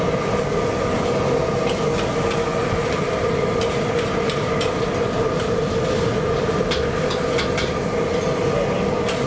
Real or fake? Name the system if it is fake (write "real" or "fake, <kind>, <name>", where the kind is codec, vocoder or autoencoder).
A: real